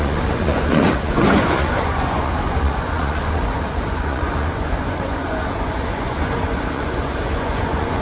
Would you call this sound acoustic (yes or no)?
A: no